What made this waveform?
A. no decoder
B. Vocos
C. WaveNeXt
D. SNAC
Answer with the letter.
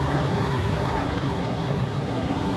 D